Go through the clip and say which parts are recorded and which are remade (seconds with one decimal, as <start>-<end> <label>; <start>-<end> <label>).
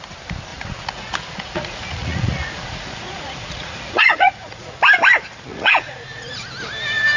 0.0-0.5 recorded; 0.5-4.8 remade; 4.8-5.5 recorded; 5.5-6.5 remade; 6.5-7.2 recorded